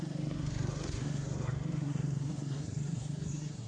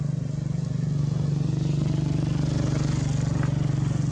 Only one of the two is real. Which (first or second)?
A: second